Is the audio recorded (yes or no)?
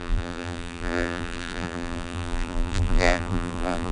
no